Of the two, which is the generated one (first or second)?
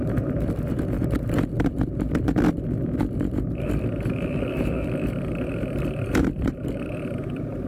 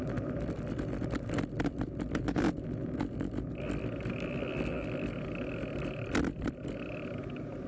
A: first